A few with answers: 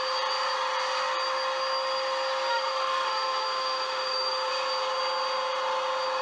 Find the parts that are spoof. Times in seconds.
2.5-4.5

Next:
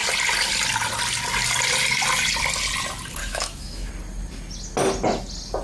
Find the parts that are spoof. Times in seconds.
3.2-3.9

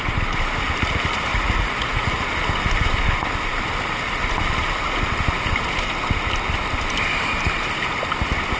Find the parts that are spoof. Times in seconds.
1.3-2.1

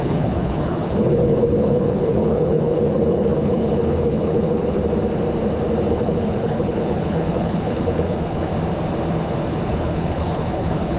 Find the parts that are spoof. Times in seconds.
0.0-4.8; 5.9-8.5; 9.5-11.0

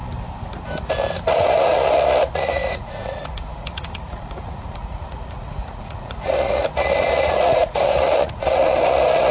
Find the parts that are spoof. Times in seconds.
1.1-9.3

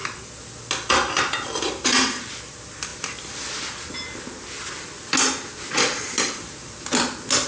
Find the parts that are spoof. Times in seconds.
none

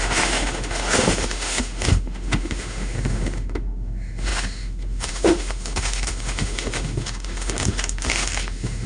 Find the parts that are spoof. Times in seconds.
0.0-8.9

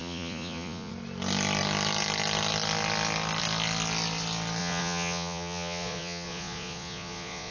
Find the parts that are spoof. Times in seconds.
0.0-0.9; 4.6-7.5